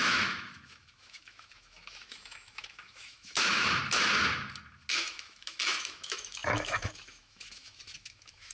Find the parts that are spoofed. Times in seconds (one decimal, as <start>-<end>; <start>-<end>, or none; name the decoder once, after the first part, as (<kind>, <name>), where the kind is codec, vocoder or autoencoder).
0.0-3.8 (autoencoder, DAC-VAE); 4.9-8.5